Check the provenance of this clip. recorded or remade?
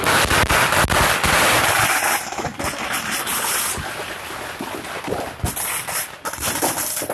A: recorded